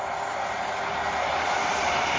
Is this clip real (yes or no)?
no